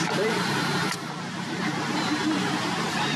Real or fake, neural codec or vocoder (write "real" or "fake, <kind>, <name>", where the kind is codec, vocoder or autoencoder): fake, vocoder, BigVGAN v2